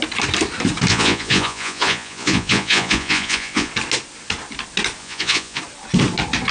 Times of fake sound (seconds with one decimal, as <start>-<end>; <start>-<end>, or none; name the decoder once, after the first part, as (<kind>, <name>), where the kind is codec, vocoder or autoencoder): 0.9-3.7 (vocoder, Vocos); 5.0-5.6